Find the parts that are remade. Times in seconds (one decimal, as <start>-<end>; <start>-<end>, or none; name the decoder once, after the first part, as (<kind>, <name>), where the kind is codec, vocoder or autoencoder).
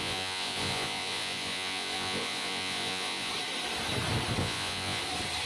0.0-3.3 (vocoder, Vocos); 4.4-5.0